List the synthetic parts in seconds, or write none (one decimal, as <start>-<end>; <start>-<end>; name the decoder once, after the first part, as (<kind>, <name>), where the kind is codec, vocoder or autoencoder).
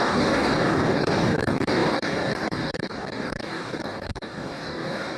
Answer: 0.0-5.2 (codec, DAC)